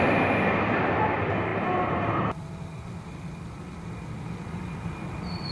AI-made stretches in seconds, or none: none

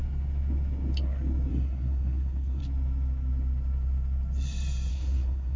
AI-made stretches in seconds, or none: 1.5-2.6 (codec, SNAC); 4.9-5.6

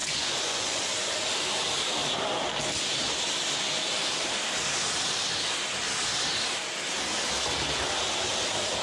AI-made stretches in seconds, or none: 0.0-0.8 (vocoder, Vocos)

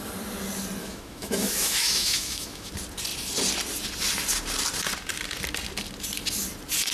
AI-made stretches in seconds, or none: 0.8-2.7 (autoencoder, DAC-VAE)

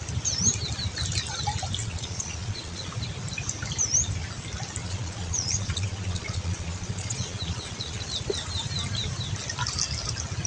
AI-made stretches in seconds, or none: 1.8-3.0 (vocoder, Vocos); 4.8-8.0

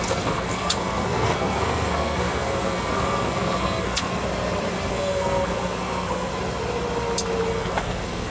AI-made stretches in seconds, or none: 0.0-4.1 (codec, SNAC); 4.9-6.3; 7.5-8.3